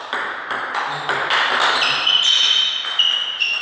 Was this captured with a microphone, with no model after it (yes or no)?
yes